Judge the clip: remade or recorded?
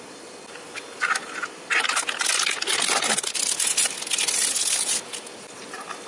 recorded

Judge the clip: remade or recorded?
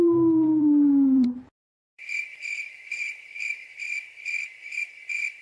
remade